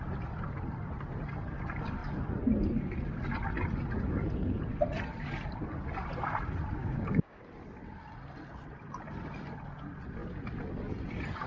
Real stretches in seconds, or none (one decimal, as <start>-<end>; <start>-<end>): 0.0-6.8; 7.4-11.5